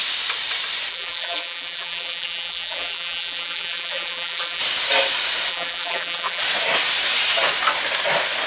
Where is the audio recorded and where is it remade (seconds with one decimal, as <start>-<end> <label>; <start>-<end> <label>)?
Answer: 0.0-0.9 recorded; 0.9-4.6 remade; 4.6-5.5 recorded; 5.5-6.4 remade; 6.4-8.5 recorded